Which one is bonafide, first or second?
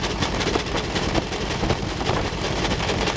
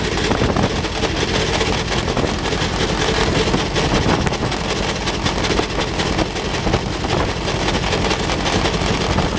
second